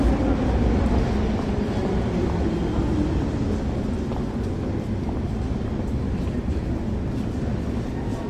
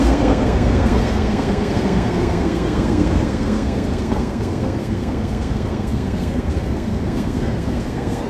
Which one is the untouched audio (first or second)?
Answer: first